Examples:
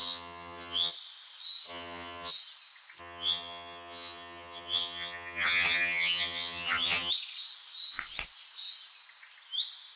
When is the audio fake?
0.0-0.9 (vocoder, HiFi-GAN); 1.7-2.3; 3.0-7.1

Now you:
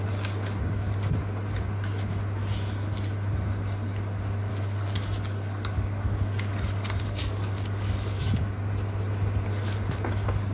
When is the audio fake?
4.5-8.2 (codec, DAC)

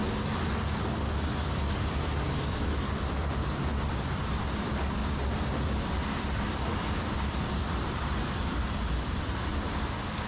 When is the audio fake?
0.8-5.0 (vocoder, BigVGAN v2); 5.8-6.7; 7.5-10.3

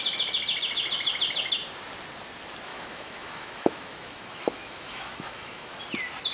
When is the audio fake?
2.7-5.7 (autoencoder, DAC-VAE)